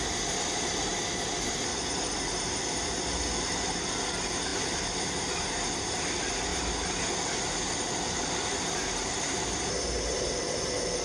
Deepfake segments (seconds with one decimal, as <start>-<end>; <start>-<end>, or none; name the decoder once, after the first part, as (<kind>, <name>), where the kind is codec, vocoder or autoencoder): 0.0-4.5 (vocoder, BigVGAN v2); 5.2-11.0

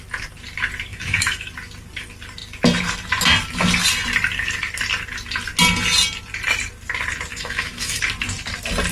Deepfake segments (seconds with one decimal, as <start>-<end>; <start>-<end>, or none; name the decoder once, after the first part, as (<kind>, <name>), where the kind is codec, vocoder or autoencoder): 0.9-1.5 (autoencoder, DAC-VAE); 7.3-8.0